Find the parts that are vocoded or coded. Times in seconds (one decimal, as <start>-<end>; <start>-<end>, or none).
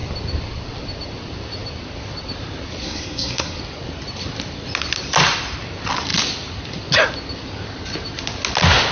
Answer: 2.8-3.6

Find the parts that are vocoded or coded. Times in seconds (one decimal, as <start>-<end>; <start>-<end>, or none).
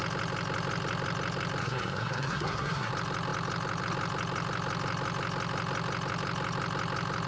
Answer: 1.6-2.9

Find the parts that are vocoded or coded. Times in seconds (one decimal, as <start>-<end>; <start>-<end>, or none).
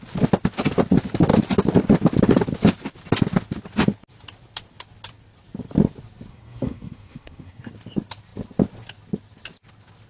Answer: 6.3-7.7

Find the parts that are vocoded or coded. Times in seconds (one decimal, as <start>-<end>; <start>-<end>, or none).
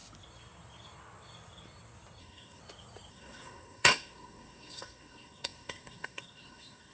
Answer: 2.2-2.6; 3.1-6.9